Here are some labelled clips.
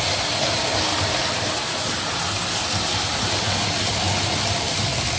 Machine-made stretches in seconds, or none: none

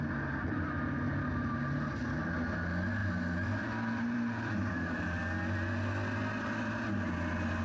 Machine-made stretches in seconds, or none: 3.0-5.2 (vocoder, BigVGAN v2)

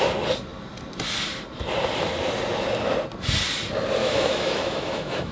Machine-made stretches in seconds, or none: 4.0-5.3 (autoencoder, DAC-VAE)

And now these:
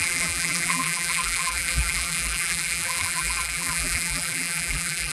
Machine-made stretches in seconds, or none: 0.0-5.1 (vocoder, BigVGAN v2)

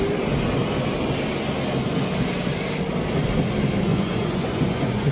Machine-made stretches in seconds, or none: 3.9-5.1 (vocoder, Vocos)

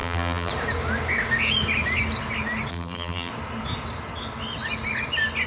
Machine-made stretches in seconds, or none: 0.0-0.5 (vocoder, BigVGAN v2); 2.7-3.3